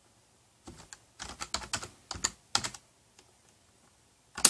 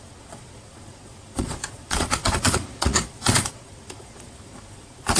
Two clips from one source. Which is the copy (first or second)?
second